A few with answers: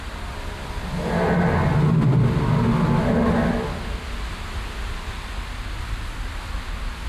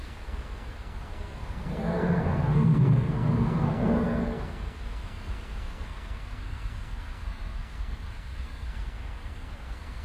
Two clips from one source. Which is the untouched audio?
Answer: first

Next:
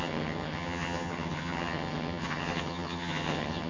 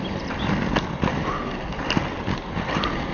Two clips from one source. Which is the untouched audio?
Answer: second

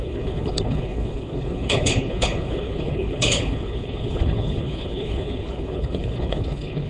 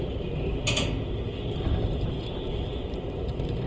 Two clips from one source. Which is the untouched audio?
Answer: second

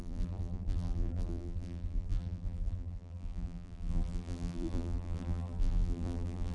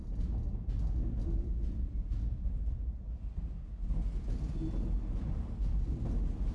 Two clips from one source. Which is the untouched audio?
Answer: second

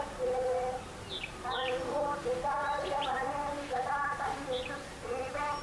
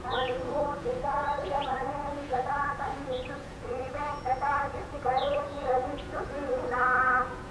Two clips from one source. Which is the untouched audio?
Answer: first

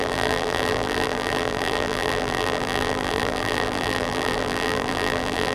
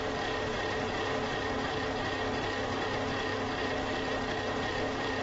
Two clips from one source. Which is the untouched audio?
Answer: second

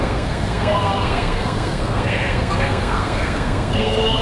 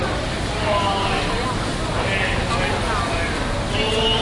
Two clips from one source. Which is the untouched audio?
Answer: second